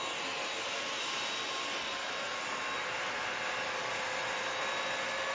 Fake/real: real